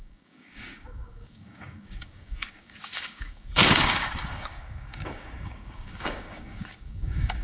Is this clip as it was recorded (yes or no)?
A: no